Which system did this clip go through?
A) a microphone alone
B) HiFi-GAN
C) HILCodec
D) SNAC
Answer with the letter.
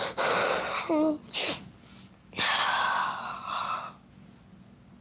A